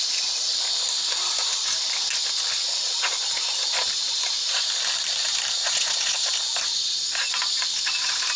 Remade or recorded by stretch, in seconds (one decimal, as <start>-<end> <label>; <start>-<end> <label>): 0.0-2.7 recorded; 2.7-3.2 remade; 3.2-5.6 recorded; 5.6-6.3 remade; 6.3-8.4 recorded